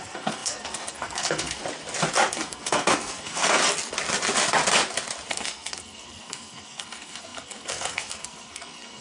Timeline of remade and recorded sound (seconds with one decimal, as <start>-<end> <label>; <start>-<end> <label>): 0.0-1.6 remade; 1.6-2.3 recorded; 2.3-3.6 remade; 3.6-5.3 recorded; 5.3-9.0 remade